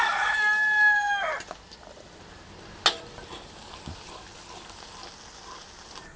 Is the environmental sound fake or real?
real